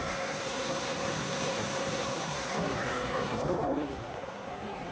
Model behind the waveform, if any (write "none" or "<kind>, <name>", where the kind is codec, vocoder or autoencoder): codec, SNAC